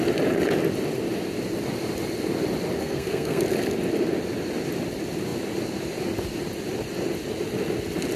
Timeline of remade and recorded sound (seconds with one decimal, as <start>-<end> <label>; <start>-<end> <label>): 0.0-2.8 recorded; 2.8-3.4 remade; 3.4-8.2 recorded